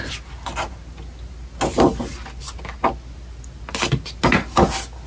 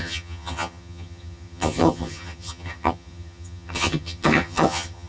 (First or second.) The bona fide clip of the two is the first